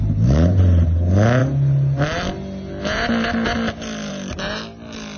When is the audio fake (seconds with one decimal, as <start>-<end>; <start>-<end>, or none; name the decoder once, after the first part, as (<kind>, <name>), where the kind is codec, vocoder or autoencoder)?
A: none

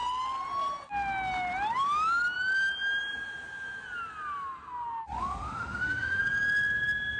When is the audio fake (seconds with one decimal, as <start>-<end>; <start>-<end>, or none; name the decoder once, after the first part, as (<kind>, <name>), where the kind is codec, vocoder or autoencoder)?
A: 5.2-6.2 (autoencoder, DAC-VAE)

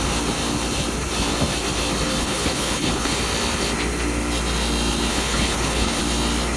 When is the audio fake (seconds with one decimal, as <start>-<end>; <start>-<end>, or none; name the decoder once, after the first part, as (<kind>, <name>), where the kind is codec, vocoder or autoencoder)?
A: 2.2-3.2 (codec, HILCodec); 5.1-6.0

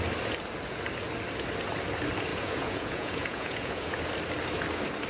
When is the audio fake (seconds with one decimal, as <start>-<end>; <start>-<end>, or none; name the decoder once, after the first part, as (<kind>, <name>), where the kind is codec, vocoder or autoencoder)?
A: 2.3-4.0 (vocoder, Vocos)

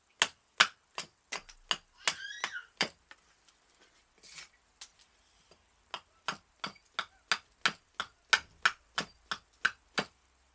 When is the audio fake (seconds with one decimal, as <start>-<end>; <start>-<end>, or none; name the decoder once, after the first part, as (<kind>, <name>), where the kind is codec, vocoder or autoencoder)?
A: 2.5-3.3 (vocoder, BigVGAN v2)

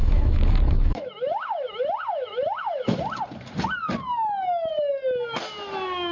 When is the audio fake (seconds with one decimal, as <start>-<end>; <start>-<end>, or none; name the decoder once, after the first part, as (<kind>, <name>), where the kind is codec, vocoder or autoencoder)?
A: 0.0-3.0 (autoencoder, DAC-VAE)